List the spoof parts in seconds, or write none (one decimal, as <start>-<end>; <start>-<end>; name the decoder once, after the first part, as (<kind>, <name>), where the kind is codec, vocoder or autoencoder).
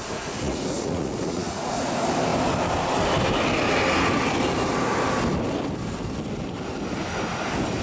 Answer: 0.0-1.9 (vocoder, Vocos)